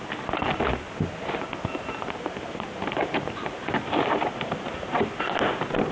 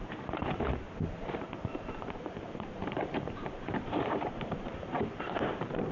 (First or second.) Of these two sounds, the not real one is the second